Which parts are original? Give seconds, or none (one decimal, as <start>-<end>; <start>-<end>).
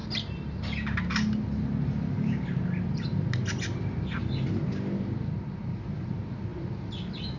0.0-7.4